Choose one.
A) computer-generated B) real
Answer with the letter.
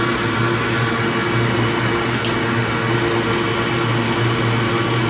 B